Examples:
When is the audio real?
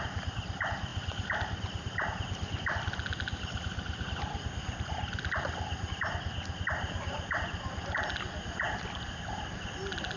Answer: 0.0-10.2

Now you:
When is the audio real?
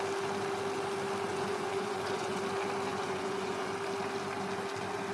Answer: 0.0-1.3; 2.4-2.9; 3.7-5.1